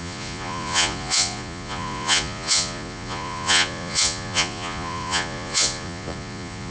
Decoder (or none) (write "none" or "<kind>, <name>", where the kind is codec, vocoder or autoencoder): vocoder, Vocos